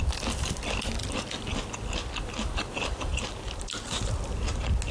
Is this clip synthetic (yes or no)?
no